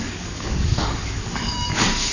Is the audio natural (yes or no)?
no